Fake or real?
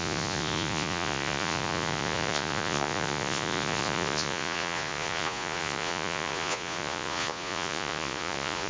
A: fake